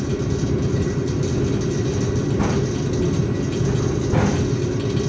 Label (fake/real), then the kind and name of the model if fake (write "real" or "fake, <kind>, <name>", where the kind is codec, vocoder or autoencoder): real